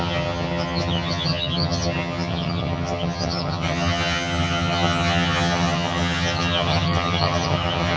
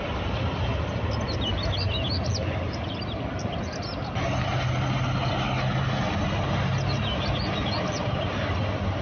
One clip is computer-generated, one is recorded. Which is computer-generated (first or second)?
first